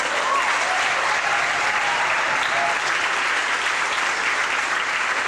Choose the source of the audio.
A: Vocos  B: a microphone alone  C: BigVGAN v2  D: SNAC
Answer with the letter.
B